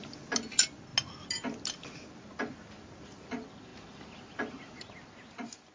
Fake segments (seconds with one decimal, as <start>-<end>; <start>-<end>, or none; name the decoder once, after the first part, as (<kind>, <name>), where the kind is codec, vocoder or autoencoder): none